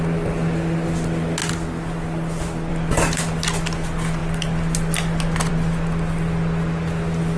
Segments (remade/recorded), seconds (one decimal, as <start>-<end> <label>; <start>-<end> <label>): 0.0-7.4 recorded

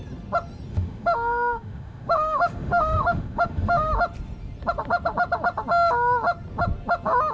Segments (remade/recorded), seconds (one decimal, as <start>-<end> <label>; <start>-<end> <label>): 0.0-0.7 recorded; 0.7-3.9 remade; 3.9-7.3 recorded

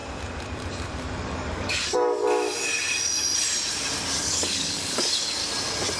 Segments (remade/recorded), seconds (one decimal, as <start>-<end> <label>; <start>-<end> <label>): 0.0-1.0 recorded; 1.0-2.2 remade; 2.2-4.2 recorded; 4.2-5.4 remade; 5.4-6.0 recorded

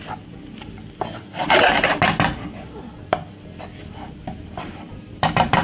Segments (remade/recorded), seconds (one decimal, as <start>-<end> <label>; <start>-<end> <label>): 0.0-0.8 remade; 0.8-4.2 recorded; 4.2-5.6 remade

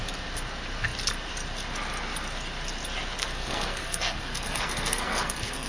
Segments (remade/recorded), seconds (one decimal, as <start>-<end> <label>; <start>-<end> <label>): 0.0-3.2 recorded; 3.2-5.7 remade

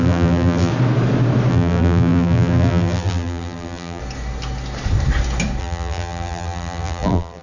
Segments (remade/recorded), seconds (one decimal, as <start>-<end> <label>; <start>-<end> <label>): 0.0-0.7 remade; 0.7-1.5 recorded; 1.5-4.0 remade; 4.0-5.6 recorded; 5.6-7.4 remade

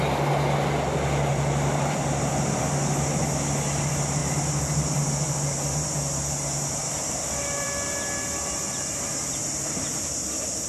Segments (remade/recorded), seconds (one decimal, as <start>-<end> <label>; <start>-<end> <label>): 0.0-1.3 recorded; 1.3-2.6 remade; 2.6-6.8 recorded; 6.8-7.7 remade; 7.7-10.7 recorded